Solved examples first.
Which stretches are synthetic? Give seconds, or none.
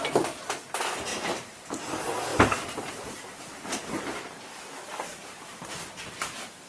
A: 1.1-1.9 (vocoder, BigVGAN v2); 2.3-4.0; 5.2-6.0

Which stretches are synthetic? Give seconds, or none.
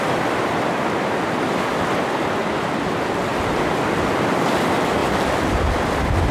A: 3.3-4.3 (vocoder, BigVGAN v2); 5.0-6.3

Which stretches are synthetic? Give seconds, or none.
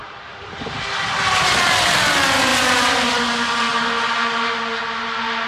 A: 0.0-0.8 (vocoder, BigVGAN v2); 2.5-3.1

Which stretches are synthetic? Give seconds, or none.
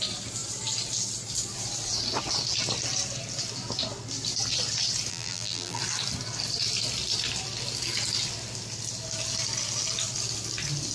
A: 5.1-5.8 (vocoder, BigVGAN v2)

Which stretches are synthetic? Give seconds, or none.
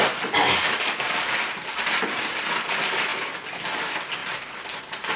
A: 4.2-4.8 (vocoder, BigVGAN v2)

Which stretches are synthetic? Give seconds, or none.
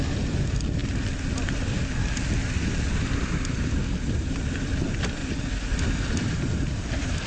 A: 0.0-0.8 (vocoder, BigVGAN v2); 4.6-5.2; 6.0-7.3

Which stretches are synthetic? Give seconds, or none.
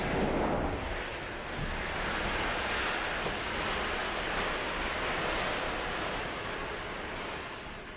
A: none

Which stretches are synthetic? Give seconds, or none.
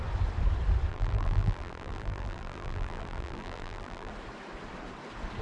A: 0.9-4.1 (vocoder, BigVGAN v2)